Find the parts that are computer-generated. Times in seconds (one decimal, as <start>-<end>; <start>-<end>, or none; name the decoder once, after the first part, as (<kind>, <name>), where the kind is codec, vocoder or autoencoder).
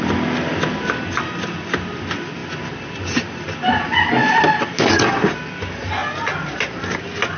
none